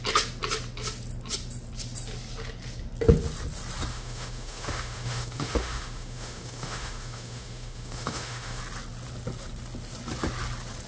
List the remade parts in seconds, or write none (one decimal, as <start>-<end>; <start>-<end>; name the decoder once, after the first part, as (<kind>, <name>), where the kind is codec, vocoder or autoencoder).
3.9-8.6 (autoencoder, DAC-VAE)